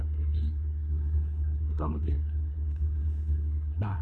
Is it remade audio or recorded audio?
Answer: remade